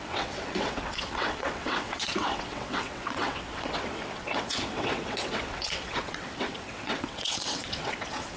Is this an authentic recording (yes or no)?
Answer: no